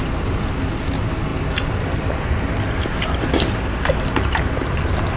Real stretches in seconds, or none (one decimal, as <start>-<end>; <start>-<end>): 0.0-5.2